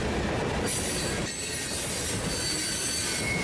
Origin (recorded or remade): recorded